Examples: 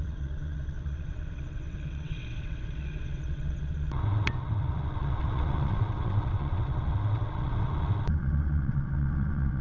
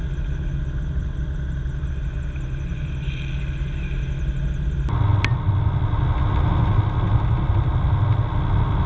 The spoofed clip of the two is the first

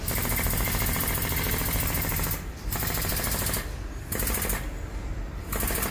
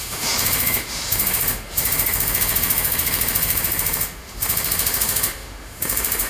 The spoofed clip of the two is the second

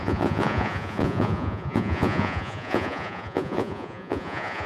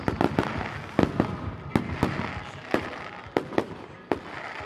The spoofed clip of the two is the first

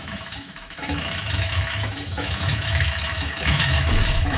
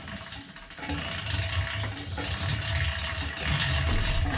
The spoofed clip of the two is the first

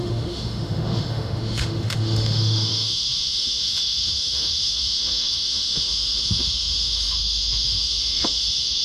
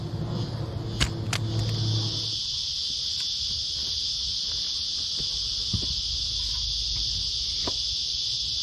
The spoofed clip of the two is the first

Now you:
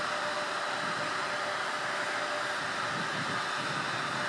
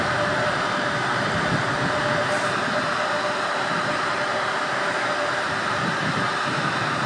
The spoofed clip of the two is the second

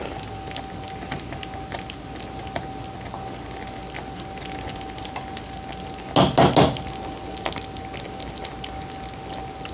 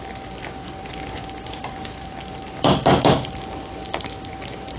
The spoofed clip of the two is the second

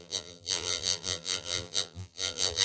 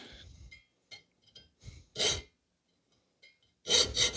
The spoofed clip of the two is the first